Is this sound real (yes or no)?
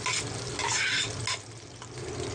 yes